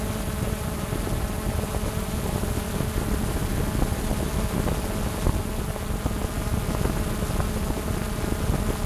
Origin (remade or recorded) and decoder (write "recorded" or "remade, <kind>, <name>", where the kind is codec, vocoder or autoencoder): recorded